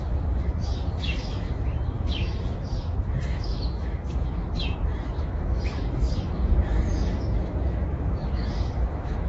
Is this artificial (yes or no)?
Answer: yes